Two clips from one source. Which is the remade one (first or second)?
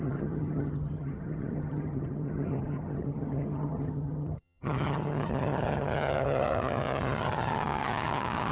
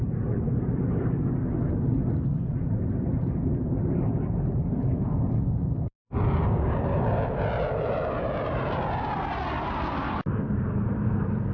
first